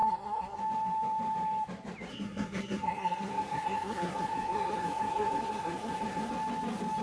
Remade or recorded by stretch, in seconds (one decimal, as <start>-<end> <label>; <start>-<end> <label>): 0.0-0.6 remade; 0.6-2.1 recorded; 2.1-6.3 remade; 6.3-7.0 recorded